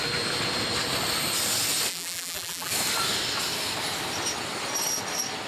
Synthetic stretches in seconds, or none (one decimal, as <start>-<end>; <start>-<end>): 1.9-2.7